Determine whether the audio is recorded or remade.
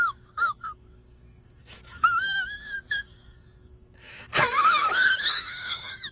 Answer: remade